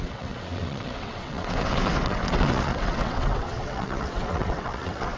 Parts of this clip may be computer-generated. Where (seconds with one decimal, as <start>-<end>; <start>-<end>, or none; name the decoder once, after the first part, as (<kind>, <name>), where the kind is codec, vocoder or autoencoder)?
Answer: 0.0-5.2 (vocoder, WaveNeXt)